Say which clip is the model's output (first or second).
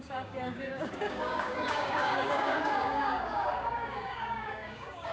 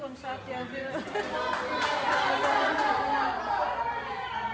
first